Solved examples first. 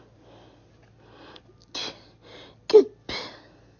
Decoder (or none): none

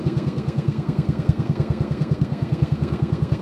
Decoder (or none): codec, SNAC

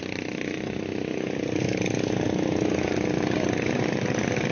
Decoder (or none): none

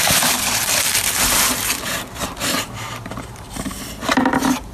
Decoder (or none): vocoder, BigVGAN v2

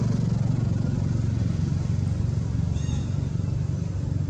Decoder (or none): none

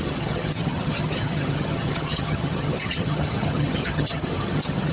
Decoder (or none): vocoder, HiFi-GAN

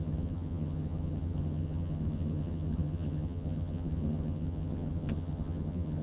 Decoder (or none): vocoder, HiFi-GAN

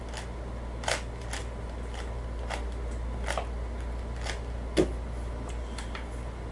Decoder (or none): none